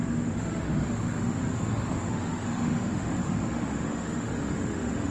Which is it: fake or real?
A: fake